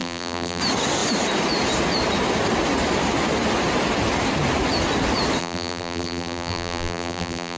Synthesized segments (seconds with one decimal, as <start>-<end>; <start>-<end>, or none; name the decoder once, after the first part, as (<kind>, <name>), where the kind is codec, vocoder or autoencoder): 0.0-0.6 (vocoder, BigVGAN v2); 5.4-7.6